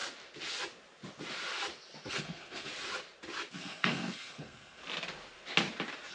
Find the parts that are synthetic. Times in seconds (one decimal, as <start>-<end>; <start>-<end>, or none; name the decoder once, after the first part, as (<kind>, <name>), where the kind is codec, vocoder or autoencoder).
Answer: 2.1-2.7 (codec, SNAC); 3.5-4.8